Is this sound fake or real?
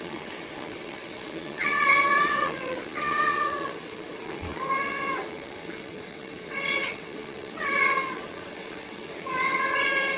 fake